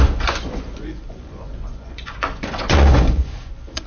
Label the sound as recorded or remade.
remade